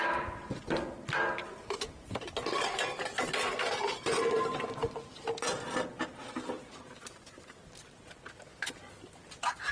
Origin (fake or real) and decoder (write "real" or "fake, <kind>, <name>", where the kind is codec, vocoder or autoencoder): real